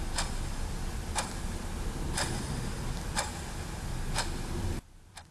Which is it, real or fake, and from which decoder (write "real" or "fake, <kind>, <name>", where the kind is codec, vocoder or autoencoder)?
real